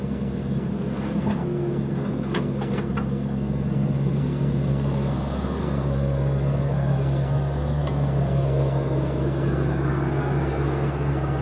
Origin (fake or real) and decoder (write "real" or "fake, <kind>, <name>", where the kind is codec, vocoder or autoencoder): fake, codec, SNAC